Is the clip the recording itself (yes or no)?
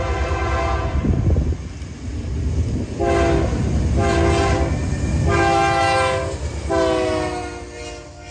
yes